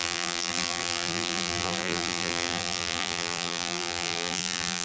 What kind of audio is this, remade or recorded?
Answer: remade